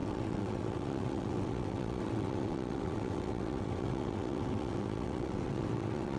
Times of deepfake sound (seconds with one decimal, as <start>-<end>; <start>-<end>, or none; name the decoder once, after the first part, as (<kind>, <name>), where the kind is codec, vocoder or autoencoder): 0.0-6.2 (vocoder, WaveNeXt)